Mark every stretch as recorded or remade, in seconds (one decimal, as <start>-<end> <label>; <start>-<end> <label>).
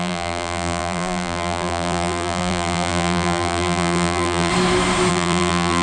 0.0-4.5 remade; 4.5-5.1 recorded; 5.1-5.8 remade